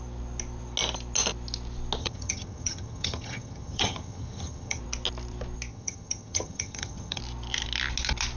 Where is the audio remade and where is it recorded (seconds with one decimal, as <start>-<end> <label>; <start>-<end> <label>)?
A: 0.0-2.0 recorded; 2.0-4.8 remade; 4.8-5.7 recorded; 5.7-7.2 remade; 7.2-8.4 recorded